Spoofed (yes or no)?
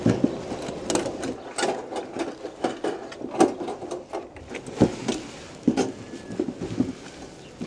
no